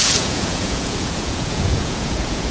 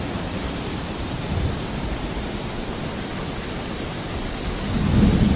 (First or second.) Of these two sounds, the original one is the second